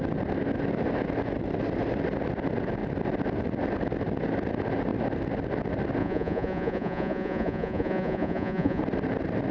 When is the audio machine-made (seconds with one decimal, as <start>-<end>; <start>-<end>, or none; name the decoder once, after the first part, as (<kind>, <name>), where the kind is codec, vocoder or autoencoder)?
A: 6.0-8.8 (vocoder, Vocos)